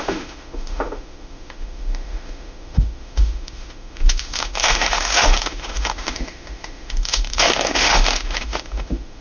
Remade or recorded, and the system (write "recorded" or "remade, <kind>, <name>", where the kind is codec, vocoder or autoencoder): remade, autoencoder, DAC-VAE